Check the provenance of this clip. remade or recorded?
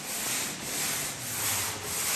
recorded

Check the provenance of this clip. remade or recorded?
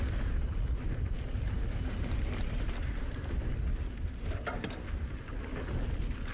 recorded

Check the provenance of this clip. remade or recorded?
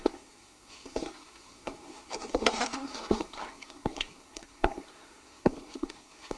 remade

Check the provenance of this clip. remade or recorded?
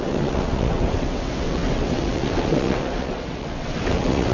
remade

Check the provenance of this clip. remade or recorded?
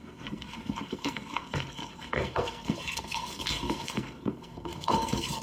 remade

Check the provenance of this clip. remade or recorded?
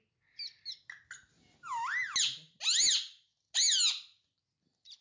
recorded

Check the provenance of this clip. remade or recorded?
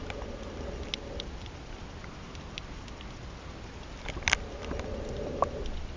recorded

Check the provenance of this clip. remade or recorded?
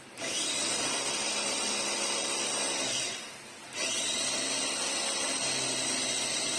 recorded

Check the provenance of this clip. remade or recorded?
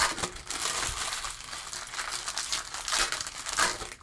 recorded